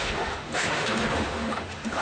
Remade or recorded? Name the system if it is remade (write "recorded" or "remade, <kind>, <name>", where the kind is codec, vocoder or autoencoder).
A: remade, autoencoder, DAC-VAE